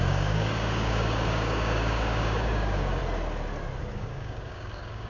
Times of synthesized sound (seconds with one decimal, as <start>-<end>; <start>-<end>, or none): 0.0-3.0; 3.8-5.1